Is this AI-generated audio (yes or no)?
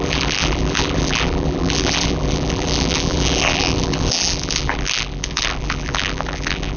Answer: yes